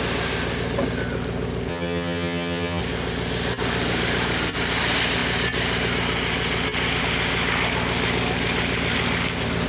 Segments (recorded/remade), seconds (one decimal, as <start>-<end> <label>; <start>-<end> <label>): 0.0-1.7 recorded; 1.7-2.8 remade; 2.8-9.7 recorded